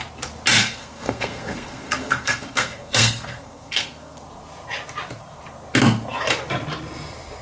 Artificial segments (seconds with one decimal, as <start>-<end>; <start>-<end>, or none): 0.6-4.2